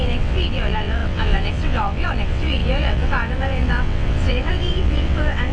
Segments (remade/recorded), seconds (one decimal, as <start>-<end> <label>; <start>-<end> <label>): 0.0-5.5 remade